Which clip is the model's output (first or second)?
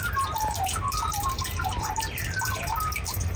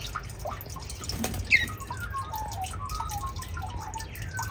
first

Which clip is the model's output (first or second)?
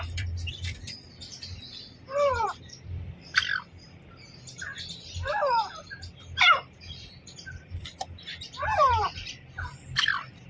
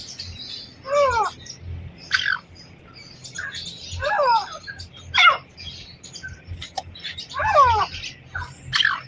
first